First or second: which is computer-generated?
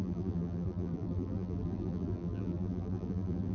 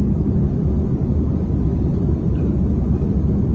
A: first